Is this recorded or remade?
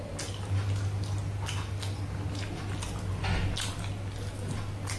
recorded